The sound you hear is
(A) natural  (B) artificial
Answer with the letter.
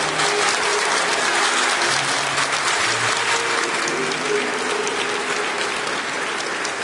A